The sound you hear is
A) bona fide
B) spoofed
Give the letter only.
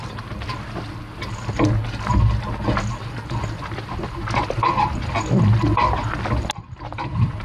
A